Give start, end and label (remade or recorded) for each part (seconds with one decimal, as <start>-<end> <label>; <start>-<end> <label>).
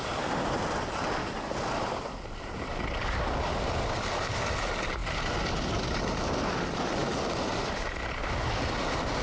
0.0-9.2 recorded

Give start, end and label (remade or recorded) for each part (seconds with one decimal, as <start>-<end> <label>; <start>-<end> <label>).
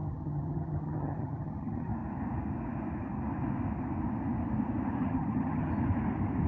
0.0-1.9 remade; 1.9-5.0 recorded; 5.0-5.7 remade; 5.7-6.5 recorded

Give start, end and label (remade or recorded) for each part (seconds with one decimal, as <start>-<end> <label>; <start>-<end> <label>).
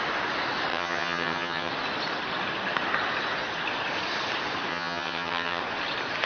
0.0-0.7 recorded; 0.7-1.7 remade; 1.7-4.7 recorded; 4.7-5.6 remade; 5.6-6.3 recorded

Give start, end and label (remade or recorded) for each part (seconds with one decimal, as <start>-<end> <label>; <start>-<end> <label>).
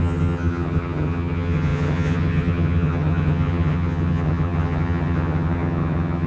0.0-6.3 remade